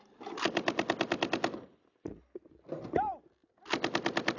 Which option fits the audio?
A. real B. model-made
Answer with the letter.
A